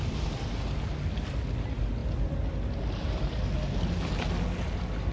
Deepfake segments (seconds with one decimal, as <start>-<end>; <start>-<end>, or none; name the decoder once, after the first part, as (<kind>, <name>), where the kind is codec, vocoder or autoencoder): none